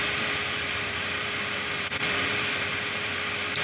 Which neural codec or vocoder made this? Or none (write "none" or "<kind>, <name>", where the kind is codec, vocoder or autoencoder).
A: vocoder, BigVGAN v2